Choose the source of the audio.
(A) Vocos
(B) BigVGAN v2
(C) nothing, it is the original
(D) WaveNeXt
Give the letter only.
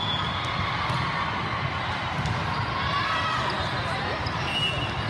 C